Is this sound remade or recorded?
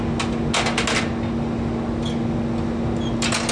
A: recorded